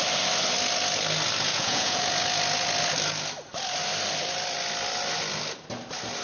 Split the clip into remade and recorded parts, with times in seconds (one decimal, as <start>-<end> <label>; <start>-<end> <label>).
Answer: 0.0-1.5 recorded; 1.5-2.0 remade; 2.0-6.2 recorded